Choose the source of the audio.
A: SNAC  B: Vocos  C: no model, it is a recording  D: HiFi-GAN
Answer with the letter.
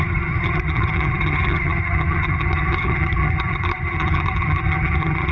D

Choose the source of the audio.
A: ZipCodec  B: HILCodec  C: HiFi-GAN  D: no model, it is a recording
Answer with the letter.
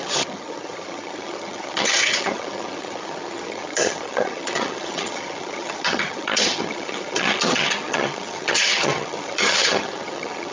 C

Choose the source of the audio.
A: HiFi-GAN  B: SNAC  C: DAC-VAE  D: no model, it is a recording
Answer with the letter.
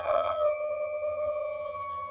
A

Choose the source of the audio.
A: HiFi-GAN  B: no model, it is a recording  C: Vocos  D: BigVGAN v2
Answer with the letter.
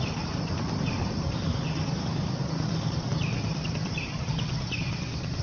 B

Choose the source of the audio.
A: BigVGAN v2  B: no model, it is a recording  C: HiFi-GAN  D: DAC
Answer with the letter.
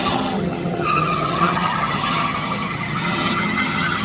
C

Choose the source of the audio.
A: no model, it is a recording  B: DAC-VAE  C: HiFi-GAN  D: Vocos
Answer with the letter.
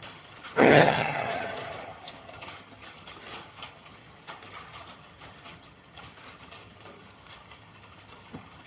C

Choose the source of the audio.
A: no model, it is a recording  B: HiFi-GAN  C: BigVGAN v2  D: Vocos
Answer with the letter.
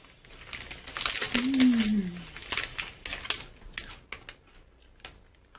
A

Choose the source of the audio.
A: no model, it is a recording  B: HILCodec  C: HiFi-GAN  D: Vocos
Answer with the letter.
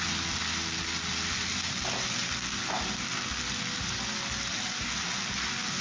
A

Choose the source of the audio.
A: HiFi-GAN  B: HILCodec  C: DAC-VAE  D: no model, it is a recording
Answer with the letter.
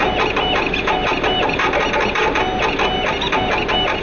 D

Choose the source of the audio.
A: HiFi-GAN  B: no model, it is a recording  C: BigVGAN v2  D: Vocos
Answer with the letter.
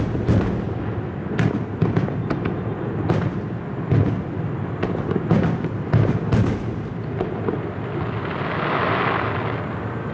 B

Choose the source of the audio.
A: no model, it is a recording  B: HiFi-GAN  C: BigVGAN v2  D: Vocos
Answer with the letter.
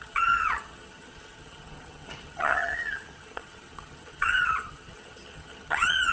B